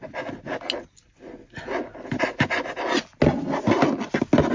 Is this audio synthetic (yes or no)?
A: no